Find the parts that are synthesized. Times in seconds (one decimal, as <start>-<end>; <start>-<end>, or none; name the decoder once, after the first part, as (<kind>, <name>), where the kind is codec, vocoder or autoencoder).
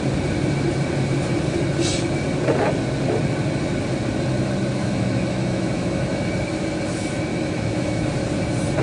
4.8-6.2 (autoencoder, DAC-VAE); 7.3-8.1